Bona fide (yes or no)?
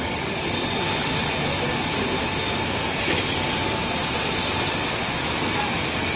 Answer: yes